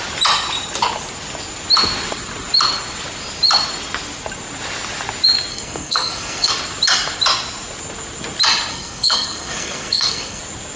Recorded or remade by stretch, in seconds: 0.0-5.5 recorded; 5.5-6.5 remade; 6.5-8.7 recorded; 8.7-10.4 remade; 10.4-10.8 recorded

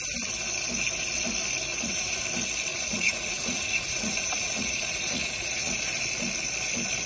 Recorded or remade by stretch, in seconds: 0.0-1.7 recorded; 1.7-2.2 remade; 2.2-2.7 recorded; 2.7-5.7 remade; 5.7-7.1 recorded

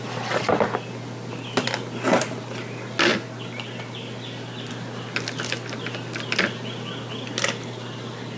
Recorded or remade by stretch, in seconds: 0.0-8.4 recorded